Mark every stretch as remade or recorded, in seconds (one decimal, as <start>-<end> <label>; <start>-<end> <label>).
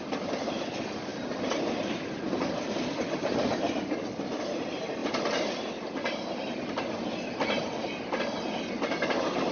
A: 0.0-1.1 recorded; 1.1-3.6 remade; 3.6-5.0 recorded; 5.0-8.2 remade; 8.2-9.5 recorded